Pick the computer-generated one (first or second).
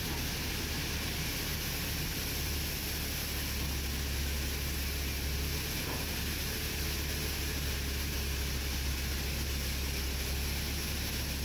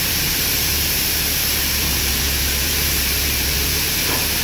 second